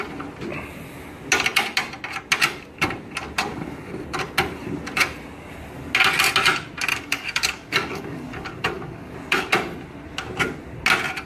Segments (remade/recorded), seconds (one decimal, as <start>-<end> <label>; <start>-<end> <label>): 0.0-3.4 recorded; 3.4-3.9 remade; 3.9-6.9 recorded; 6.9-9.5 remade; 9.5-11.3 recorded